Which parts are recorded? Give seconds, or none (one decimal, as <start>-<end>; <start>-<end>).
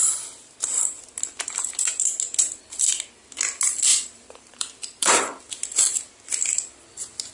0.0-3.9; 5.4-7.3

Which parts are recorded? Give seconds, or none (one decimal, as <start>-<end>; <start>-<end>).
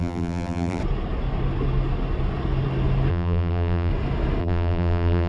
0.8-3.1; 3.9-4.4